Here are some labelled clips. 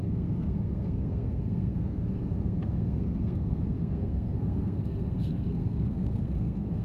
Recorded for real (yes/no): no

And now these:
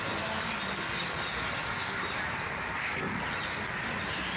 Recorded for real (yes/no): yes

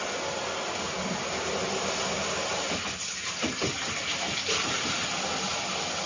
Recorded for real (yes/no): yes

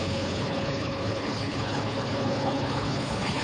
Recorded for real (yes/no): no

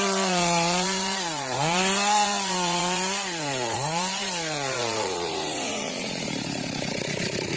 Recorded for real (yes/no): no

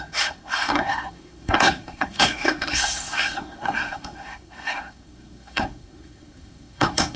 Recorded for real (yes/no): no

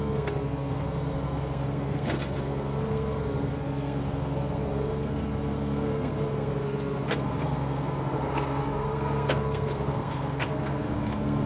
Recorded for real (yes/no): no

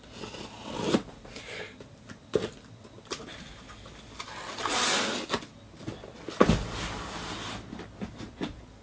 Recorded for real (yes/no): yes